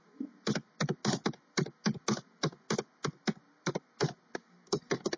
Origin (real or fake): real